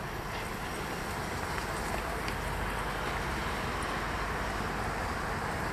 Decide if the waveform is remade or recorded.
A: recorded